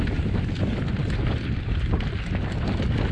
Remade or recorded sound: recorded